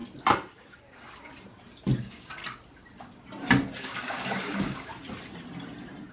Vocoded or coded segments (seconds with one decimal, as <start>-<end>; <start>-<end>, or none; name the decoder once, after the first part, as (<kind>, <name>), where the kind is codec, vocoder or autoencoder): 0.8-1.3 (codec, DAC); 2.0-2.4; 3.8-4.9